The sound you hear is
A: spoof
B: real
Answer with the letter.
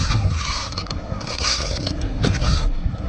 A